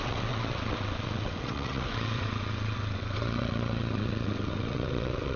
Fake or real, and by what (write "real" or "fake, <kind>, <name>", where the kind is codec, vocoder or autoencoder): fake, vocoder, WaveNeXt